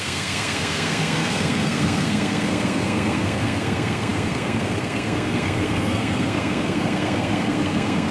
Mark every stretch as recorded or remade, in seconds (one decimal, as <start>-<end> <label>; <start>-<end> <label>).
0.0-8.1 remade